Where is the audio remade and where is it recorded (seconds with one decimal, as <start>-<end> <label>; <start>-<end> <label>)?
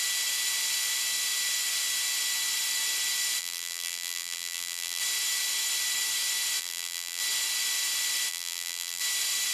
0.0-3.4 recorded; 3.4-5.0 remade; 5.0-6.6 recorded; 6.6-7.2 remade; 7.2-8.3 recorded; 8.3-9.0 remade; 9.0-9.5 recorded